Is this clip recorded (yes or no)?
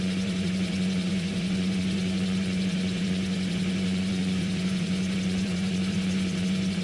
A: no